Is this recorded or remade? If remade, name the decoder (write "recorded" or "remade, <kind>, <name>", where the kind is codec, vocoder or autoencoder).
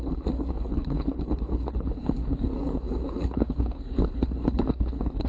remade, codec, HILCodec